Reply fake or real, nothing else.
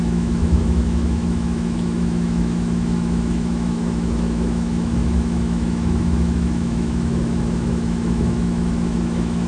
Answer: fake